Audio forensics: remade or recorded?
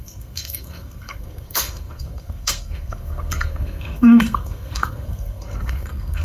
remade